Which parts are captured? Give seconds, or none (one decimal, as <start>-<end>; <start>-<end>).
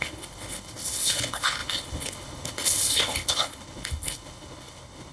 none